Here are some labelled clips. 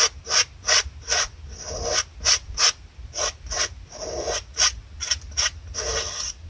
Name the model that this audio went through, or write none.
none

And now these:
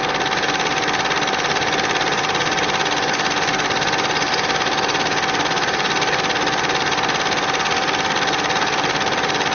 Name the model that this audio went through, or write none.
none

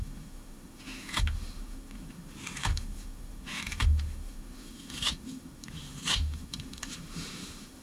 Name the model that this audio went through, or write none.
autoencoder, DAC-VAE